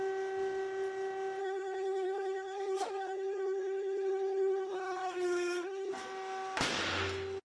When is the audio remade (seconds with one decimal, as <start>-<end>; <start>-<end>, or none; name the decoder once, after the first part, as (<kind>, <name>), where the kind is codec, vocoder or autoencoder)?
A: 1.4-5.9 (codec, SNAC)